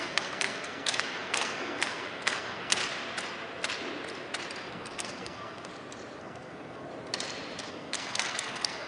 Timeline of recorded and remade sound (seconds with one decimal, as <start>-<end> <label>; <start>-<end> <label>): 0.0-2.8 remade; 2.8-4.7 recorded; 4.7-5.7 remade; 5.7-6.2 recorded; 6.2-6.9 remade; 6.9-7.7 recorded; 7.7-8.9 remade